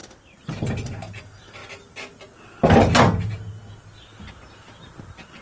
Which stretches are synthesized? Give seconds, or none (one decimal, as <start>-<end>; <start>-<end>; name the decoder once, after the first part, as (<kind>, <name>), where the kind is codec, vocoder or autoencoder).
none